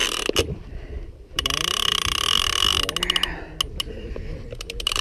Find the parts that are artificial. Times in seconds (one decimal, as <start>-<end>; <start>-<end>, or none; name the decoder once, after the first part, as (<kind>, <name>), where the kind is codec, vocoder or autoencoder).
0.6-1.9 (vocoder, BigVGAN v2); 3.8-5.0